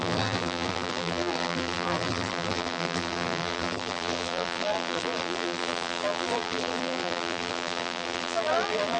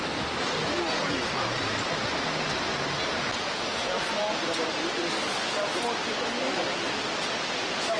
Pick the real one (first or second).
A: second